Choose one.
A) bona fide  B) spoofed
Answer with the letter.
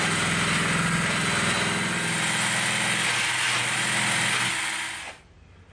A